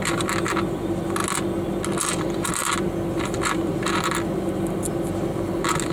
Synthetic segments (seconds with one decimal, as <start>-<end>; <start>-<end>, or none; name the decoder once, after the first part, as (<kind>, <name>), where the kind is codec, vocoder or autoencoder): none

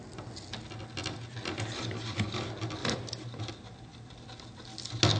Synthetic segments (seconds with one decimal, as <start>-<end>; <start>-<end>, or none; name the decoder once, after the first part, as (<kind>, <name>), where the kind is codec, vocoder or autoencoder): 2.8-3.5 (vocoder, BigVGAN v2)